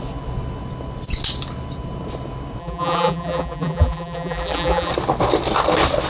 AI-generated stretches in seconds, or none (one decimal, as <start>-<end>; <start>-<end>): 2.6-4.9